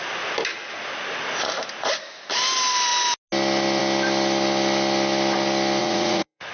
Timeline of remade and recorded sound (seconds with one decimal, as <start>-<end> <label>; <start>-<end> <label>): 0.0-5.8 recorded; 5.8-6.5 remade